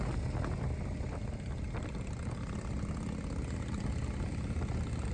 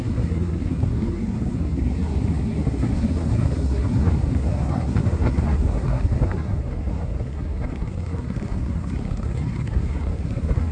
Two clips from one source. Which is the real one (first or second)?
first